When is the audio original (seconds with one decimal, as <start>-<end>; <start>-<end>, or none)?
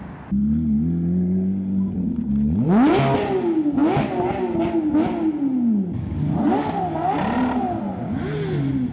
0.0-8.9